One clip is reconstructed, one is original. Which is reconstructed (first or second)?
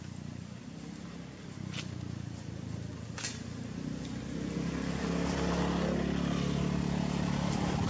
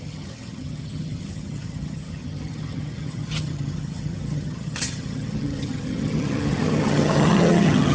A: second